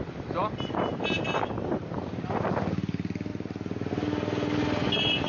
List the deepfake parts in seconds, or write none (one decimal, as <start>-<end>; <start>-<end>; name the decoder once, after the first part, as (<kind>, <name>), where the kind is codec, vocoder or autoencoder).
none